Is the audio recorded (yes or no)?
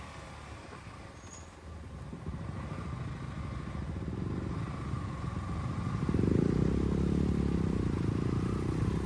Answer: yes